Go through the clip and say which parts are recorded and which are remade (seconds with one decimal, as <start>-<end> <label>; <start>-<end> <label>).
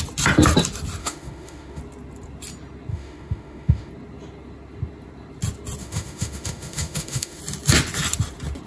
0.0-1.0 recorded; 1.0-1.8 remade; 1.8-2.9 recorded; 2.9-3.9 remade; 3.9-5.8 recorded; 5.8-7.4 remade; 7.4-8.7 recorded